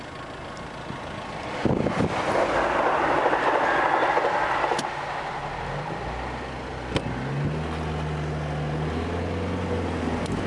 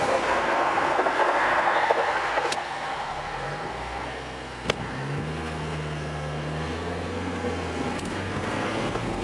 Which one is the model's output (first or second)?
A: second